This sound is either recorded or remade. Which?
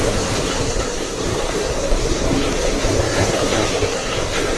remade